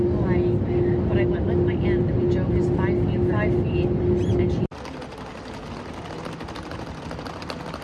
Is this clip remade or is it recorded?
recorded